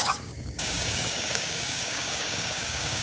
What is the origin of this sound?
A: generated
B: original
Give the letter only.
A